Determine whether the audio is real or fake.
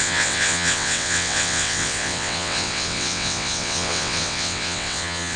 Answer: fake